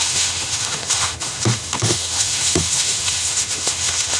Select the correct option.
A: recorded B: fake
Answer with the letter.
B